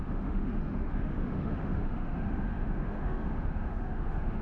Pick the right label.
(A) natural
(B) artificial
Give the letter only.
B